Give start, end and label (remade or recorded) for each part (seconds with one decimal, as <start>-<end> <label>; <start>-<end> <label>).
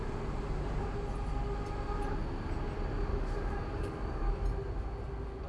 0.0-3.1 recorded; 3.1-4.4 remade; 4.4-5.5 recorded